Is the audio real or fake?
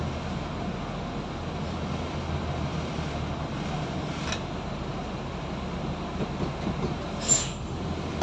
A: real